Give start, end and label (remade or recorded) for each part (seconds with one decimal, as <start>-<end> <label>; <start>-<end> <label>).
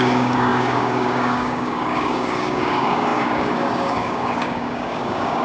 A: 0.0-5.4 remade